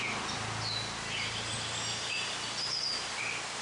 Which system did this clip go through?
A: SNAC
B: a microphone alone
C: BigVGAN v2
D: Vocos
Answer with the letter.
B